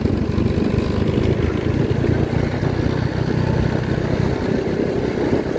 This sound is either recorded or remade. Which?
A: recorded